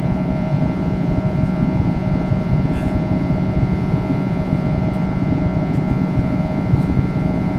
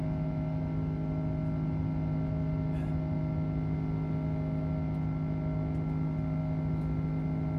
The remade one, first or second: first